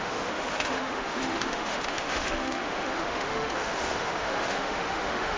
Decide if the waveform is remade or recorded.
remade